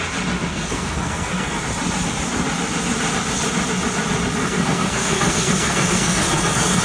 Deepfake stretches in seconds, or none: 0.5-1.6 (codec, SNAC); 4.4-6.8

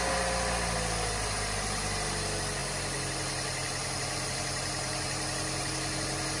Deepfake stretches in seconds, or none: none

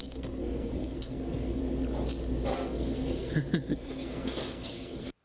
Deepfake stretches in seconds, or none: 0.0-1.6 (codec, SNAC); 2.5-3.3; 3.7-5.2

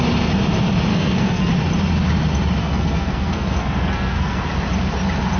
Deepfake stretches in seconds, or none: 0.9-1.5 (codec, SNAC); 2.6-4.4